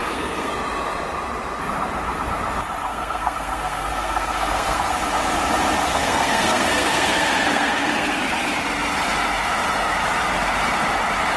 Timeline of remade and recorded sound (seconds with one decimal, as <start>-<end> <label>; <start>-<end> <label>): 0.0-0.5 remade; 0.5-2.9 recorded; 2.9-4.9 remade; 4.9-5.8 recorded; 5.8-8.2 remade; 8.2-11.4 recorded